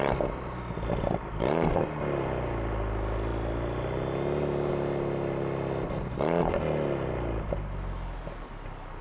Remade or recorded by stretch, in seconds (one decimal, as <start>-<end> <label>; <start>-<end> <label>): 0.0-9.0 recorded